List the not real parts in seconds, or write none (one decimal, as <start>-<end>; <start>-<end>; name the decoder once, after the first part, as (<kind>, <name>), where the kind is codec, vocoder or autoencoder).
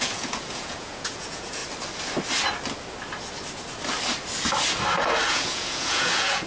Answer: 0.0-1.6 (vocoder, Vocos); 5.3-6.5